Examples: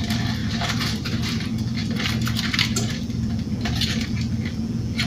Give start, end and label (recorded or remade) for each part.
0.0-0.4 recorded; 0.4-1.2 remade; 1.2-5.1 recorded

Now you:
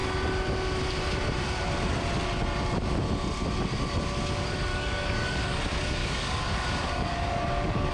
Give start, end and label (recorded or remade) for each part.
0.0-4.7 recorded; 4.7-5.6 remade; 5.6-6.0 recorded; 6.0-7.9 remade

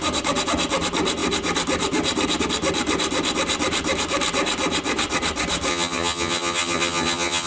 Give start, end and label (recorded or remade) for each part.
0.0-5.7 recorded; 5.7-7.5 remade

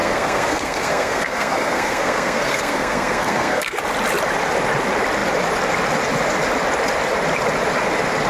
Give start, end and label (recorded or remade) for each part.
0.0-3.8 remade; 3.8-8.3 recorded